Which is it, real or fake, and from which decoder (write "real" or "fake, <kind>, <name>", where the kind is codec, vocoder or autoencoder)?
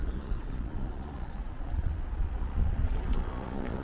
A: fake, vocoder, Vocos